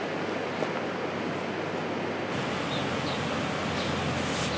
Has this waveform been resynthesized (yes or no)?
no